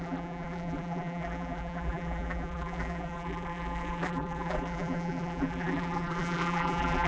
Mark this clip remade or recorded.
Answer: remade